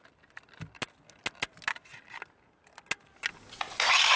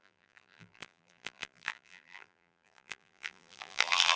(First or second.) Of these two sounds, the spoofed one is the second